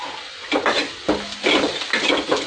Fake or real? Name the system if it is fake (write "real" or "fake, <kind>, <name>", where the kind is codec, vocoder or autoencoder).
real